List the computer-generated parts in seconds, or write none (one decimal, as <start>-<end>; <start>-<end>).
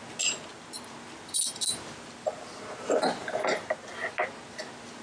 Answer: none